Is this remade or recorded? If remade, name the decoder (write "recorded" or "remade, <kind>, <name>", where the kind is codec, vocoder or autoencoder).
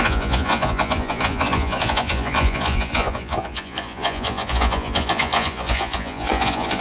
remade, vocoder, Vocos